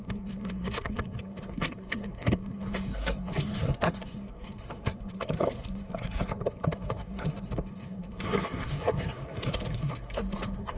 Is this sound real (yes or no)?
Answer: no